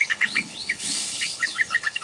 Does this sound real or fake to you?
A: fake